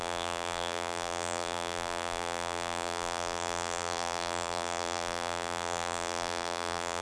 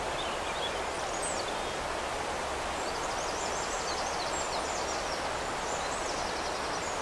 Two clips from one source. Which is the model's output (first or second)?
first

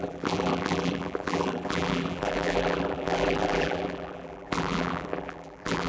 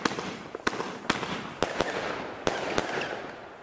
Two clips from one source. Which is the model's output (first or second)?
first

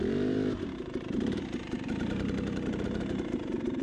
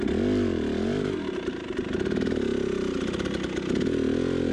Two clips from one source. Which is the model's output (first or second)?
first